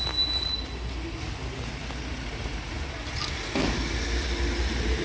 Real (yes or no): yes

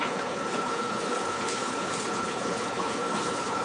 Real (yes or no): no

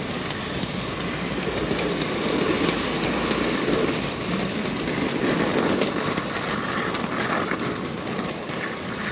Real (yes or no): yes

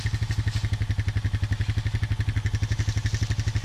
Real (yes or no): yes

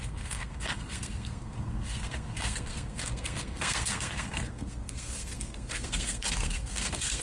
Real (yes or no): no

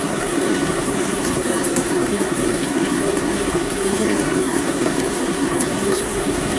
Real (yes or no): no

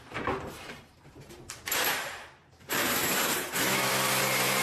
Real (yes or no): no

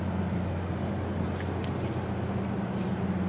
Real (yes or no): yes